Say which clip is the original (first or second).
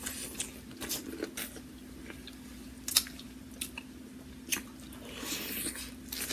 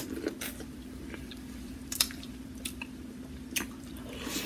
first